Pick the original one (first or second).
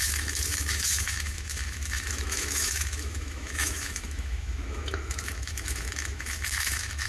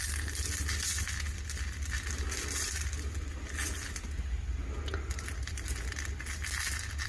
second